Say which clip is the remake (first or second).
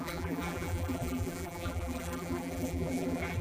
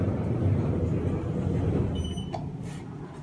first